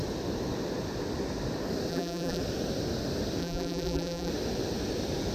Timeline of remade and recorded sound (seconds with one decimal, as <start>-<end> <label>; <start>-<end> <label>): 0.0-1.9 recorded; 1.9-2.4 remade; 2.4-3.4 recorded; 3.4-4.3 remade; 4.3-5.3 recorded